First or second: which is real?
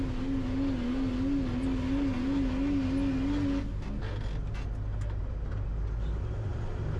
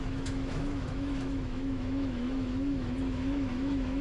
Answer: first